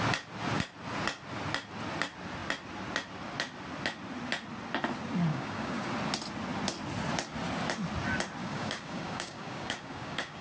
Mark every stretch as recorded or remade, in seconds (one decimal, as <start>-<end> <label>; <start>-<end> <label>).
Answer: 0.0-5.3 recorded; 5.3-5.9 remade; 5.9-8.4 recorded; 8.4-10.4 remade